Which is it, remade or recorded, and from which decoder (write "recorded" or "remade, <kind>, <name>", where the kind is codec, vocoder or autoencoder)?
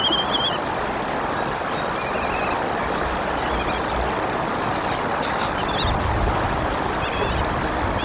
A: recorded